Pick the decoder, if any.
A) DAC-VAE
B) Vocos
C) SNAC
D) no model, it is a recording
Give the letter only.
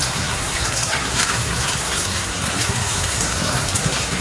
C